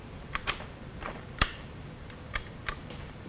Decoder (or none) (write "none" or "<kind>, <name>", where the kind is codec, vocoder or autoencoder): vocoder, BigVGAN v2